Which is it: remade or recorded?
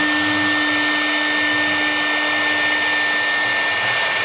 recorded